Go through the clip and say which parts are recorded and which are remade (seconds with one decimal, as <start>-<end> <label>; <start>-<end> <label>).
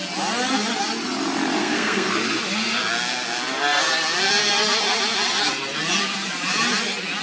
0.0-1.6 recorded; 1.6-2.1 remade; 2.1-7.2 recorded